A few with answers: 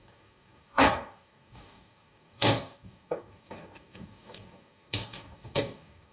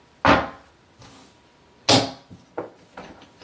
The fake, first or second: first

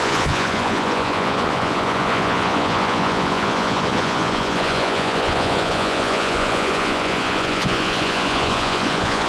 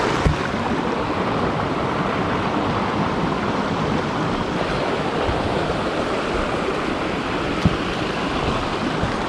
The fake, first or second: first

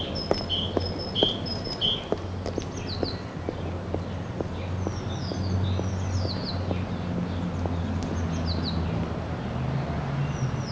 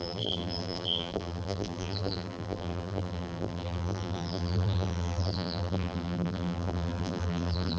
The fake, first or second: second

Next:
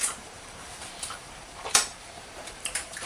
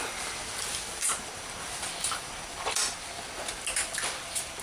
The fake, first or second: first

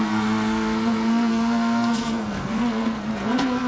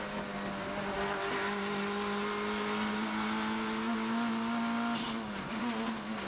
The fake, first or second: first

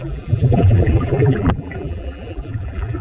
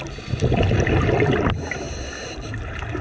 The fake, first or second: first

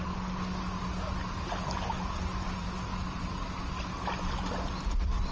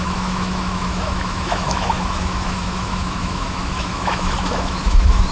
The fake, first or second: second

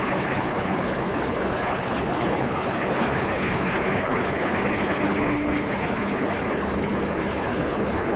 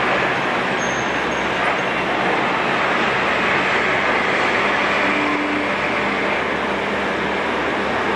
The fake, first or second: first